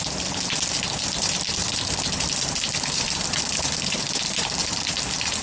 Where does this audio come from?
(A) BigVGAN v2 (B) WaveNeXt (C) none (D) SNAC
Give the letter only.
A